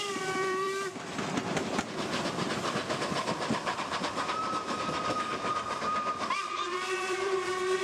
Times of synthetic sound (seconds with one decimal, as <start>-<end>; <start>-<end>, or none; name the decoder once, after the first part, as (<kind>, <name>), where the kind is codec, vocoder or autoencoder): 0.0-7.8 (vocoder, BigVGAN v2)

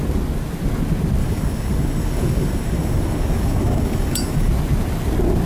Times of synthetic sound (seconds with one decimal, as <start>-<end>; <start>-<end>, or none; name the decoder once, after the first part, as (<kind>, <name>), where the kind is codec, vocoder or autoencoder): 1.2-4.5 (codec, DAC)

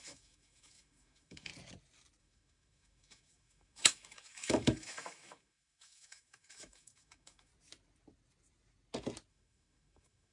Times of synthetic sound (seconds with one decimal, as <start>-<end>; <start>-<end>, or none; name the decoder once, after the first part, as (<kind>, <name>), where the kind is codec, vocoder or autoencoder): 0.0-1.5 (autoencoder, DAC-VAE); 2.2-7.5; 9.3-10.3